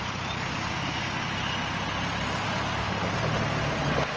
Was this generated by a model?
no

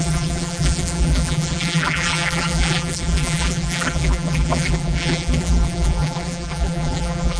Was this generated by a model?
yes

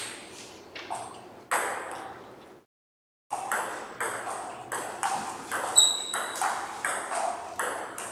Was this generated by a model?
no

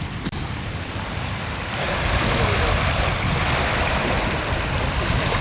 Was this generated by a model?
yes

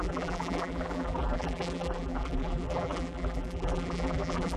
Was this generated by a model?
yes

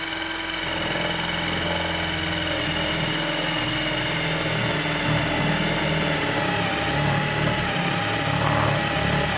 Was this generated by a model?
no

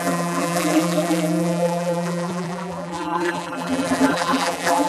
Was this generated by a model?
yes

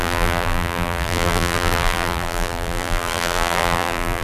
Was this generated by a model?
yes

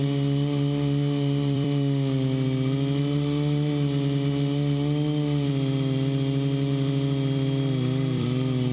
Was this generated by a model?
yes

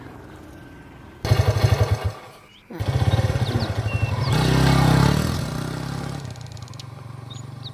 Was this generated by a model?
no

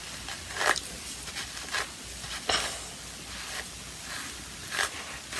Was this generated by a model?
no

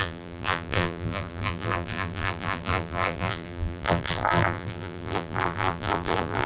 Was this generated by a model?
yes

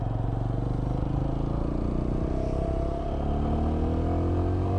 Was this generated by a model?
no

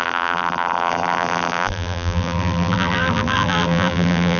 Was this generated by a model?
yes